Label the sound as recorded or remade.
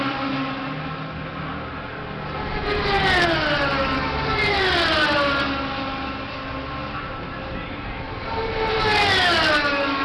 recorded